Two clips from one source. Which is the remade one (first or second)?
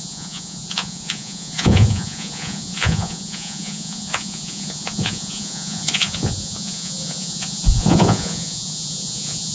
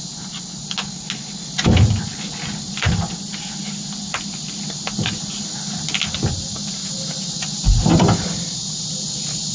first